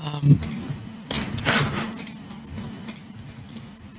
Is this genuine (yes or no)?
yes